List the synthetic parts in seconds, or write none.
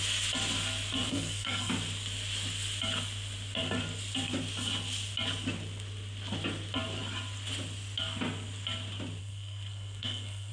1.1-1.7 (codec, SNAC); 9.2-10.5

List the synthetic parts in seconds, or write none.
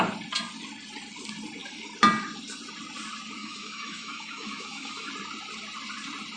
3.4-5.1 (autoencoder, DAC-VAE)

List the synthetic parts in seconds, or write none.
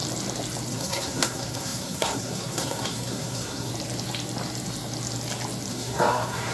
0.7-3.7 (codec, SNAC); 5.7-6.5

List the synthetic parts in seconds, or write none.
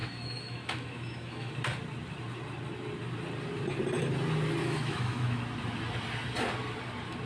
0.0-1.5 (autoencoder, DAC-VAE); 4.6-5.4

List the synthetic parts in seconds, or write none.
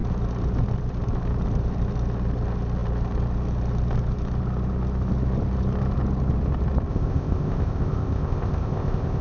6.9-9.2 (codec, ZipCodec)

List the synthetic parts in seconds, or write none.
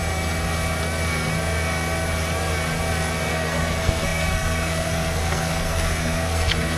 3.3-6.8 (codec, SNAC)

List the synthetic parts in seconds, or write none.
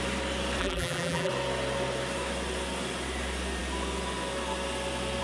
0.6-1.3 (vocoder, BigVGAN v2)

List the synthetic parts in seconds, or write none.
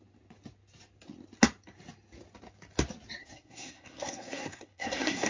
3.2-5.3 (codec, SNAC)